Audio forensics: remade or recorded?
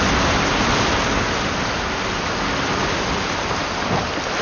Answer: recorded